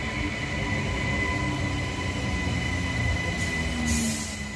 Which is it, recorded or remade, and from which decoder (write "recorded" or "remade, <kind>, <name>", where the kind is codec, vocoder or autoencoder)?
recorded